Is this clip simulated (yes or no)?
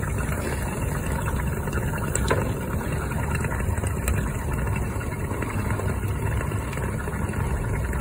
no